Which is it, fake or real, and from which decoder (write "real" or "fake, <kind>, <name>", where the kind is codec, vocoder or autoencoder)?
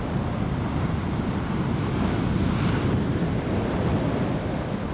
real